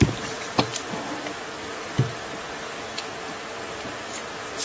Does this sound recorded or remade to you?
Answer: recorded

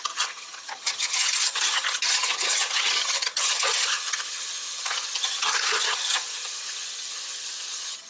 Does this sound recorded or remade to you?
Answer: remade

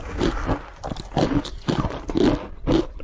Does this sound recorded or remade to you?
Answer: recorded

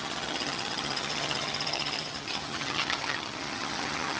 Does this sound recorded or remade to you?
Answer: remade